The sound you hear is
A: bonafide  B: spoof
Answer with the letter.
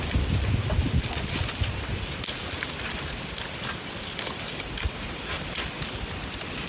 A